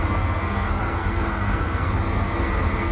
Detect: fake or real fake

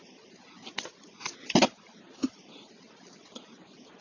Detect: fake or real real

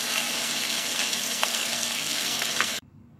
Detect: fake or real fake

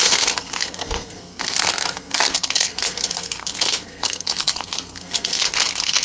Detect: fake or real fake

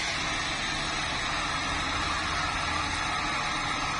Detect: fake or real real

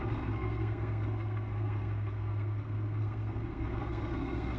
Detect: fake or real fake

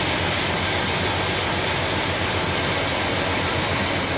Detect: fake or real real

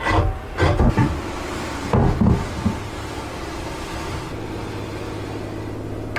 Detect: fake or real real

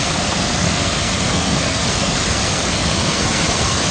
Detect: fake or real fake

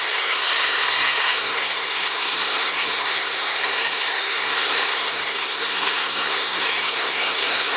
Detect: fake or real fake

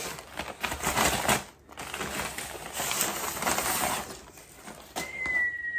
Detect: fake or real real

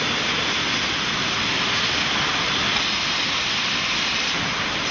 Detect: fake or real real